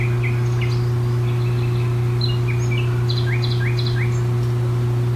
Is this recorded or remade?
recorded